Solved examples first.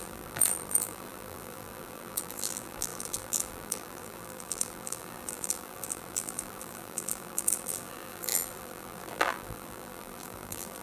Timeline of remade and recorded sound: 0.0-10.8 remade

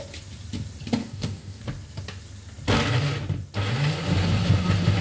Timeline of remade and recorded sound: 0.0-1.0 recorded; 1.0-1.6 remade; 1.6-5.0 recorded

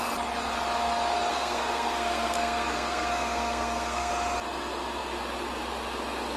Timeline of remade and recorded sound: 0.0-1.3 recorded; 1.3-4.1 remade; 4.1-6.4 recorded

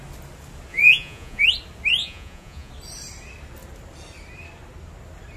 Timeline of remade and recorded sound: 0.0-0.7 recorded; 0.7-1.4 remade; 1.4-2.0 recorded; 2.0-2.7 remade; 2.7-5.4 recorded

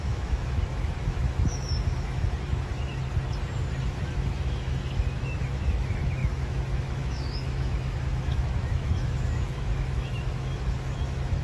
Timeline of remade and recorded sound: 0.0-3.0 remade; 3.0-3.8 recorded; 3.8-11.4 remade

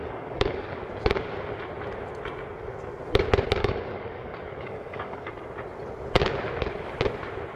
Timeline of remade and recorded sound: 0.0-0.8 remade; 0.8-3.6 recorded; 3.6-5.3 remade; 5.3-7.6 recorded

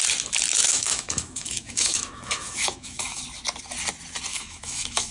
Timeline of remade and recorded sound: 0.0-0.5 recorded; 0.5-3.2 remade; 3.2-4.3 recorded; 4.3-5.1 remade